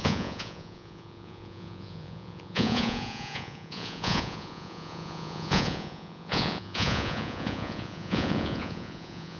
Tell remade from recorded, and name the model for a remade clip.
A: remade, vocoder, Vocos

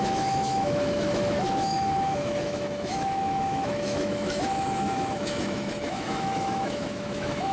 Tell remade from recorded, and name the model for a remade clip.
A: remade, autoencoder, DAC-VAE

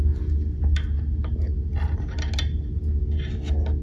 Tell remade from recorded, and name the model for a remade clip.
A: recorded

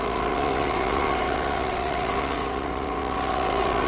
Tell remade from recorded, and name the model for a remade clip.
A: remade, vocoder, WaveNeXt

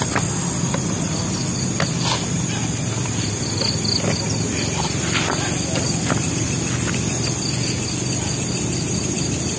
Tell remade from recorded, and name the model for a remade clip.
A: recorded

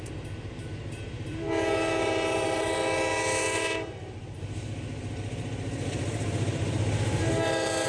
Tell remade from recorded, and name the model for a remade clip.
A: remade, vocoder, BigVGAN v2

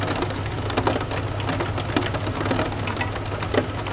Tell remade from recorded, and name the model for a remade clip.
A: recorded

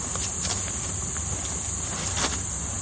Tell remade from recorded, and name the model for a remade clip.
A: recorded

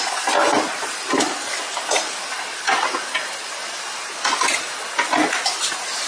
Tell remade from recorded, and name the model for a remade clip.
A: recorded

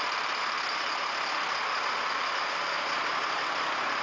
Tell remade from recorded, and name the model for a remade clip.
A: recorded